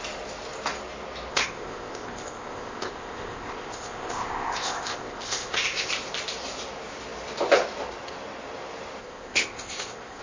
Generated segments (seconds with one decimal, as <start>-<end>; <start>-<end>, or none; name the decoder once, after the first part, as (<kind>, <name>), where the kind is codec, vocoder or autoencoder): 1.3-5.9 (codec, ZipCodec); 9.0-10.2